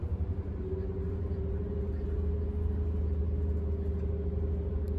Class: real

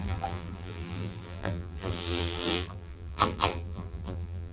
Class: fake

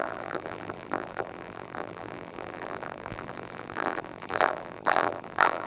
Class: fake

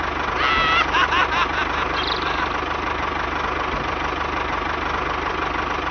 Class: real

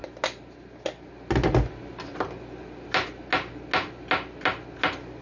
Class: real